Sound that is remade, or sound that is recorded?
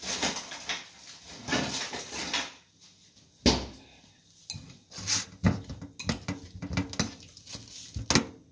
recorded